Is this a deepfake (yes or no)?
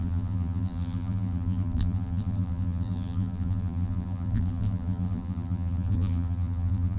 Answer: yes